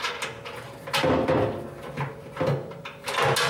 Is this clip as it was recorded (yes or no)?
yes